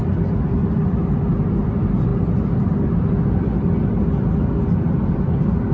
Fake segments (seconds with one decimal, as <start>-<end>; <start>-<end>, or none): none

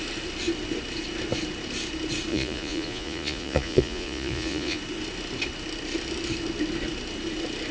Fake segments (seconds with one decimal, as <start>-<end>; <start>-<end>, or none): 2.3-4.8

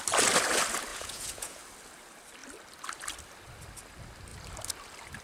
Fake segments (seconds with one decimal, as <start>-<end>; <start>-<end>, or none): 0.9-1.6

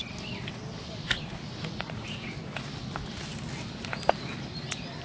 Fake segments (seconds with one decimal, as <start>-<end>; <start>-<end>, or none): 1.6-2.3

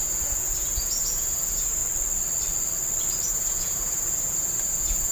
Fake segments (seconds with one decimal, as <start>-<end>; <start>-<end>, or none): 0.0-1.8; 3.3-5.1